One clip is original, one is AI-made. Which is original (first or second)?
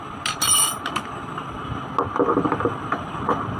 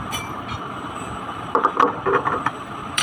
first